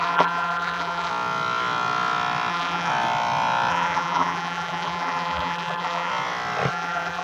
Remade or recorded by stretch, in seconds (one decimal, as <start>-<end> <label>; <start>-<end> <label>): 0.0-1.1 remade; 1.1-2.5 recorded; 2.5-2.9 remade; 2.9-3.7 recorded; 3.7-6.1 remade; 6.1-6.7 recorded; 6.7-7.2 remade